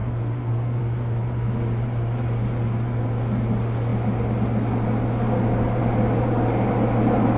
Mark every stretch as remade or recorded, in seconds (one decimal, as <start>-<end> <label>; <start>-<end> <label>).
0.0-0.8 remade; 0.8-7.4 recorded